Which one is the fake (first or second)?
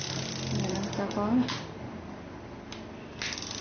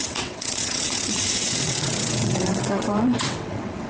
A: second